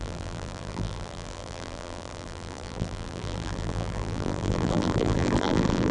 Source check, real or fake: fake